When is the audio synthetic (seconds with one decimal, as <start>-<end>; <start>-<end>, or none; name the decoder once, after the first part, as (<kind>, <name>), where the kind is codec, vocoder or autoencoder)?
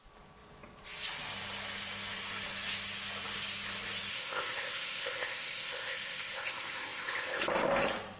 4.1-7.4 (codec, ZipCodec)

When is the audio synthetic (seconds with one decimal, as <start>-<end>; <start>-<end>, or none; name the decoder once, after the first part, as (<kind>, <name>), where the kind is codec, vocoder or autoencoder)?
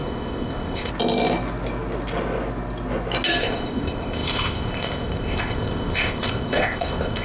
0.0-0.9 (codec, ZipCodec); 3.4-7.2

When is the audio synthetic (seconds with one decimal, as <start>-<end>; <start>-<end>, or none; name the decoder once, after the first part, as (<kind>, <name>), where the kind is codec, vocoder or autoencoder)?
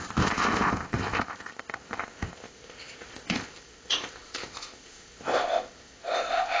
0.0-6.6 (codec, ZipCodec)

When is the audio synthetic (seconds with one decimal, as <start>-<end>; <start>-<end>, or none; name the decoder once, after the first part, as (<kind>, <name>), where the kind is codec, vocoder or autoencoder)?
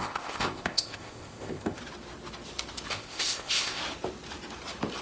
0.0-1.8 (codec, ZipCodec); 2.9-3.8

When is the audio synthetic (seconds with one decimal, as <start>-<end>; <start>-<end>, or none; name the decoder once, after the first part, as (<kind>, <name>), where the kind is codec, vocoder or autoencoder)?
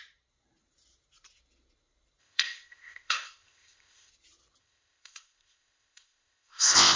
2.2-4.1 (codec, ZipCodec); 4.6-7.0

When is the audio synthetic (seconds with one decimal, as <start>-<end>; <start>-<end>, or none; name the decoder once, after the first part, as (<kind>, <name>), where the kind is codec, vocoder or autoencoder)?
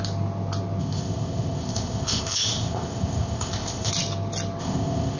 0.8-3.9 (codec, ZipCodec); 4.6-5.2